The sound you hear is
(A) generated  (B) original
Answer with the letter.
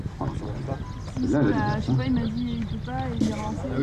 B